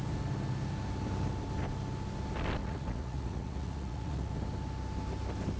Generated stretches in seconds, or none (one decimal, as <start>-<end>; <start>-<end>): 2.6-4.3